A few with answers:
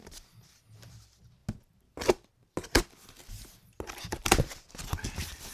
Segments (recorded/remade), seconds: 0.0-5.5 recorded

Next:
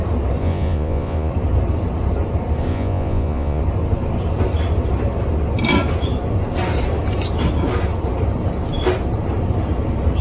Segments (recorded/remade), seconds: 0.0-0.4 recorded; 0.4-1.3 remade; 1.3-2.7 recorded; 2.7-3.6 remade; 3.6-10.2 recorded

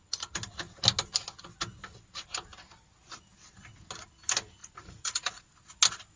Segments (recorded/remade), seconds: 0.0-4.6 recorded; 4.6-5.4 remade; 5.4-6.2 recorded

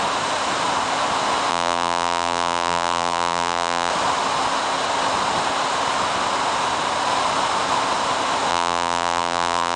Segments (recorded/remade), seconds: 0.0-1.5 recorded; 1.5-3.9 remade; 3.9-8.5 recorded; 8.5-9.8 remade

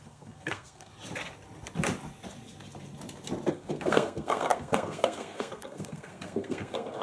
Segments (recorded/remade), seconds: 0.0-0.9 remade; 0.9-3.5 recorded; 3.5-7.0 remade

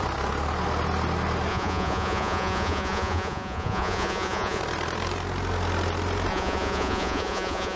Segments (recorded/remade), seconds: 0.0-1.5 recorded; 1.5-4.6 remade; 4.6-6.3 recorded; 6.3-7.8 remade

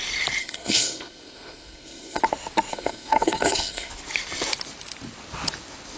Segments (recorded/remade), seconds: 0.0-0.4 recorded; 0.4-2.2 remade; 2.2-2.7 recorded; 2.7-3.9 remade; 3.9-6.0 recorded